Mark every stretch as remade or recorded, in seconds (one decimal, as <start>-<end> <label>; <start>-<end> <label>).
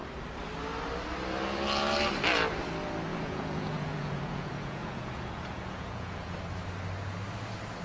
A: 0.0-3.1 recorded; 3.1-6.3 remade; 6.3-7.8 recorded